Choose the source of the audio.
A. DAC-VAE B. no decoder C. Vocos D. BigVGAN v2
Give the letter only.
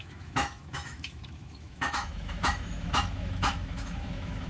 A